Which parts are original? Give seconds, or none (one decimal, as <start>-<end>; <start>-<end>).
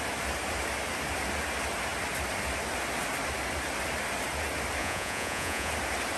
0.0-4.8; 5.7-6.2